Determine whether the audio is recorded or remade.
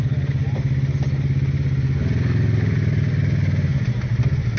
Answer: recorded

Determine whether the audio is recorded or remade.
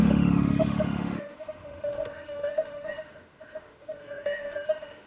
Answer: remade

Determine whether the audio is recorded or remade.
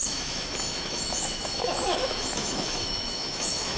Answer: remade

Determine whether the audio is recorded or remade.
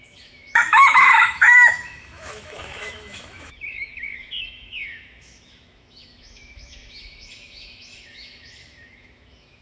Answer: remade